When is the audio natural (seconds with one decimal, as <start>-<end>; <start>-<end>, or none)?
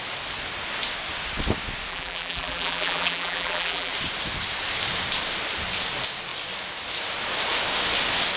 0.0-1.9; 3.9-8.4